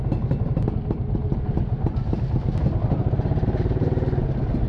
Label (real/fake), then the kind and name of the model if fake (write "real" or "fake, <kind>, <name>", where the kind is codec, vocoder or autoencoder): real